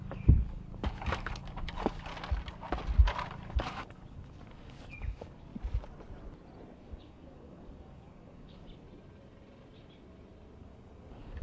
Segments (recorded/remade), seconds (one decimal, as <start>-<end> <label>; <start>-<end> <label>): 0.0-2.1 remade; 2.1-3.3 recorded; 3.3-5.5 remade; 5.5-6.9 recorded; 6.9-8.6 remade; 8.6-10.6 recorded; 10.6-11.4 remade